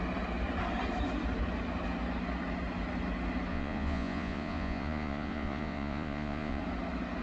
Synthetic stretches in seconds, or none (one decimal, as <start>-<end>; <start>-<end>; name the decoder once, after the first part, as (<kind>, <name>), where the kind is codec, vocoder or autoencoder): 3.5-6.6 (vocoder, Vocos)